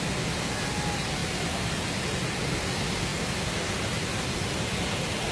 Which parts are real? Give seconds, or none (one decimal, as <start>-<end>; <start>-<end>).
0.0-5.3